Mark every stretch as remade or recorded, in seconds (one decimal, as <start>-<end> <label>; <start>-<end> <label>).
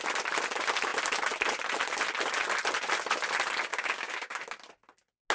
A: 0.0-3.7 recorded; 3.7-4.4 remade; 4.4-5.3 recorded